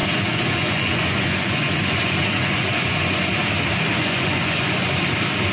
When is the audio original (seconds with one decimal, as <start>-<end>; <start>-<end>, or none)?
3.3-3.9; 5.0-5.5